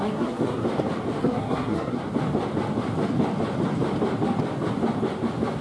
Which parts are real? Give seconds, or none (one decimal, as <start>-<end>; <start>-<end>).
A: 0.6-1.2; 2.0-5.6

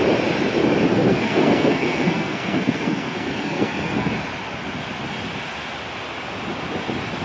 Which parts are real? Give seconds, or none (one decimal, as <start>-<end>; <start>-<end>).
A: 0.0-0.9; 4.1-7.2